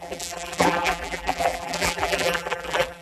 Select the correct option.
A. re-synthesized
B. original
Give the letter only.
A